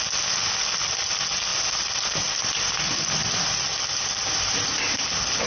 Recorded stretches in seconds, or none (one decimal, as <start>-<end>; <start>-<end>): 0.0-1.5; 2.7-3.2; 4.5-5.5